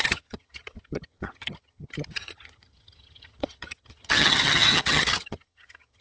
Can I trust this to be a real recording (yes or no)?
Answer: no